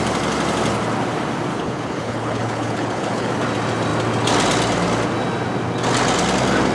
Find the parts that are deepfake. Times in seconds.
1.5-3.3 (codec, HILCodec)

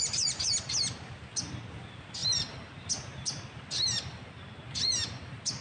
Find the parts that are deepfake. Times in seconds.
none

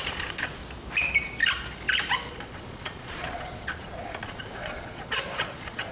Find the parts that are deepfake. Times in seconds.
0.0-0.6 (vocoder, Vocos); 2.3-5.9

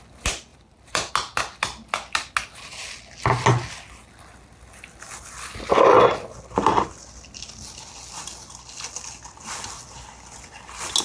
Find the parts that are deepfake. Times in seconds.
0.5-1.1 (vocoder, BigVGAN v2)

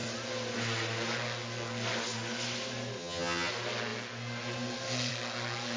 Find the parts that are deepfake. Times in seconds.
3.0-3.5 (vocoder, HiFi-GAN)

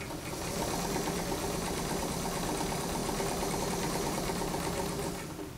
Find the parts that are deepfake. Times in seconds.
none